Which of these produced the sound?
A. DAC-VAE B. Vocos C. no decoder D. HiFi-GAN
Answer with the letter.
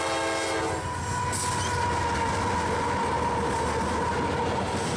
C